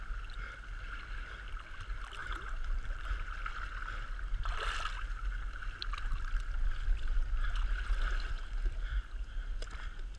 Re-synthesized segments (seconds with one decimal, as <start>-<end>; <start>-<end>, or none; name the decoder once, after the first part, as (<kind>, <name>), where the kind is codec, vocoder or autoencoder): 2.2-3.5 (vocoder, BigVGAN v2)